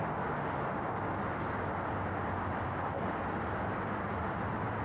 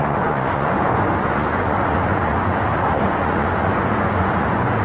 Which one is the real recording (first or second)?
first